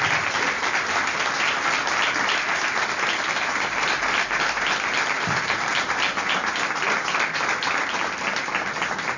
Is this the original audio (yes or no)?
yes